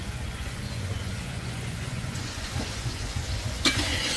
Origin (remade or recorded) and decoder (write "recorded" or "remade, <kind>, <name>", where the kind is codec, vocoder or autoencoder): remade, vocoder, Vocos